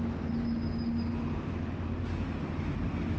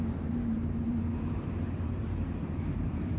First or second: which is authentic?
first